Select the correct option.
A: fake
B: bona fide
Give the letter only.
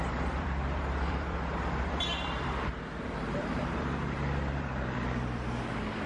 A